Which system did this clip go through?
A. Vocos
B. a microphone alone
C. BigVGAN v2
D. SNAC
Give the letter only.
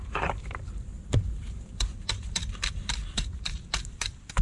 C